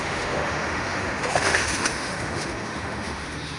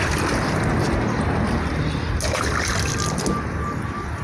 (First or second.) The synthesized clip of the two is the first